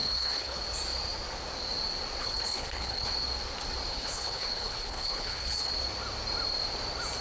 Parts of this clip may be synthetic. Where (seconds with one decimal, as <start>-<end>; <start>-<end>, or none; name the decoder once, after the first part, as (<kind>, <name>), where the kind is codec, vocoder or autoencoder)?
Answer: 0.0-0.6 (codec, HILCodec); 2.2-3.1; 3.9-5.7